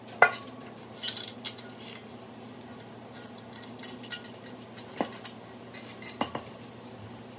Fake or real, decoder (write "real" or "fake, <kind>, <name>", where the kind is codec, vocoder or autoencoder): real